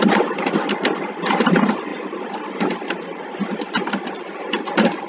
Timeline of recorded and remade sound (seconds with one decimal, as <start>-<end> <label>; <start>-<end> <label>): 0.0-5.1 recorded